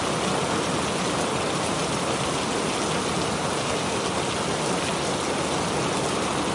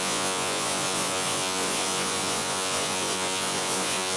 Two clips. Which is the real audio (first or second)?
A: first